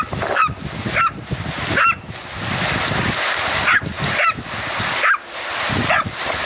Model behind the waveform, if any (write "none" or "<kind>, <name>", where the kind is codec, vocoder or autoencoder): none